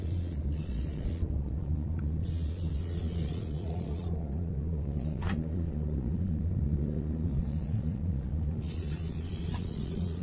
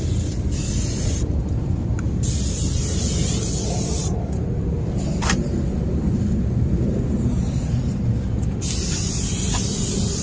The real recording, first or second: second